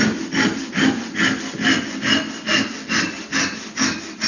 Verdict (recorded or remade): recorded